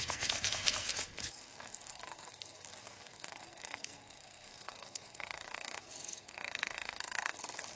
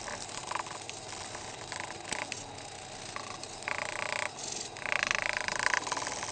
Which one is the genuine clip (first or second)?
second